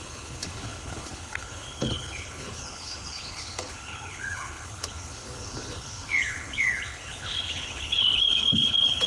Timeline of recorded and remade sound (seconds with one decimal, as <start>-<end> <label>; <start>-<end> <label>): 0.0-9.1 remade